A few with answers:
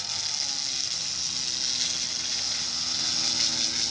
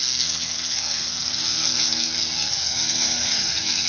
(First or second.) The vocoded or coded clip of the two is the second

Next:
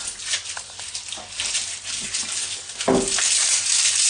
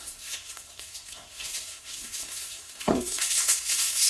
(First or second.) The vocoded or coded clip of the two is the second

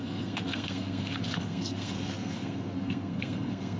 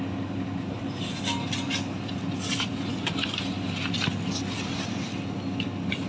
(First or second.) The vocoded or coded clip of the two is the first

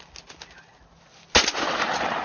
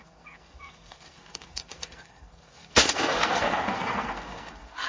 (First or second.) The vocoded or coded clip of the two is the second